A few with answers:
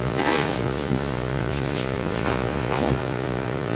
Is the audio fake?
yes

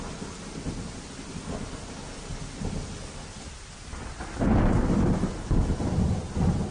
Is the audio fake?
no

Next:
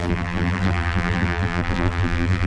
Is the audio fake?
yes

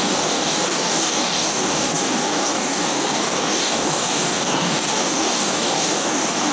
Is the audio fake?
yes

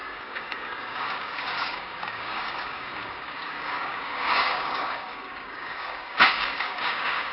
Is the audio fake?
yes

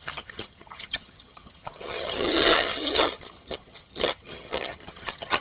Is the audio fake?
yes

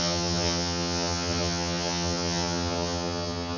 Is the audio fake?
yes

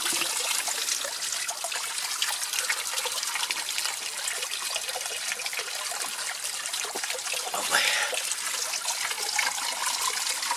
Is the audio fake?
no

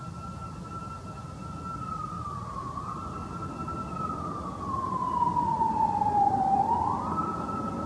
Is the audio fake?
yes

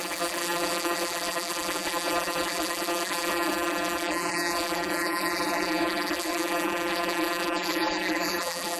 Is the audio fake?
yes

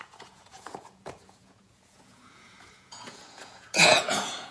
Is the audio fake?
yes